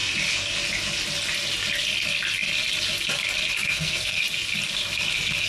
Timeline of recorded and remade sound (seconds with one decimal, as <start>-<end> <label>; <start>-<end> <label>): 0.0-3.7 recorded; 3.7-4.2 remade; 4.2-5.5 recorded